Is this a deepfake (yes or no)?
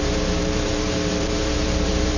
yes